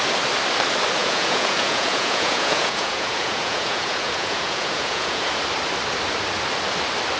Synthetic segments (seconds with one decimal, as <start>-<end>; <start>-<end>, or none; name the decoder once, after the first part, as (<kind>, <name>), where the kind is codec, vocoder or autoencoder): 1.0-5.3 (vocoder, Vocos)